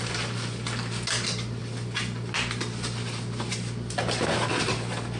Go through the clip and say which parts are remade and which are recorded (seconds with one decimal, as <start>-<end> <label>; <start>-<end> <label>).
0.0-5.2 recorded